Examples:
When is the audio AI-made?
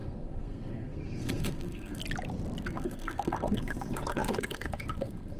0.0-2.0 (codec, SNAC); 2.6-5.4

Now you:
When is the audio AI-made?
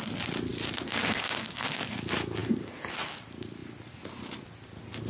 none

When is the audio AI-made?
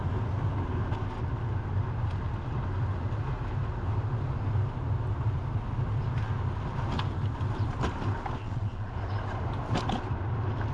8.4-8.9 (vocoder, WaveNeXt)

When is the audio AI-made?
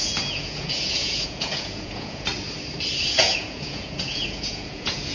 0.0-2.3 (vocoder, Vocos); 3.2-5.1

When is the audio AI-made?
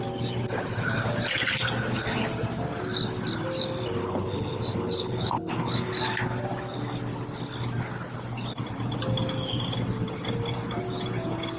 4.0-5.9 (codec, HILCodec)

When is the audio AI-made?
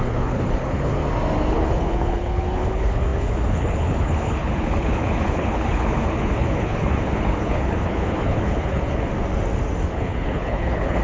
0.0-1.0 (codec, HILCodec); 1.5-9.1; 9.8-11.0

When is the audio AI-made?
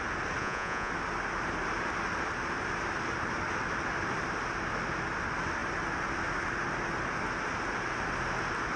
0.4-0.9 (vocoder, Vocos)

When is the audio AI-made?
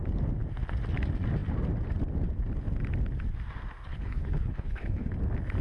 3.9-5.1 (codec, HILCodec)